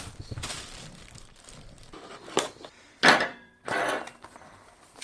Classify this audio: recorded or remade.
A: remade